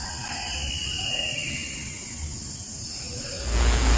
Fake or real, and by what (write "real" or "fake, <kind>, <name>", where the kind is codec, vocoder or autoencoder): real